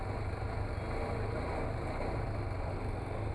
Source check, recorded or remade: recorded